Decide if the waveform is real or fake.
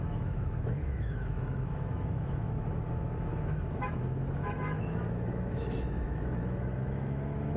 fake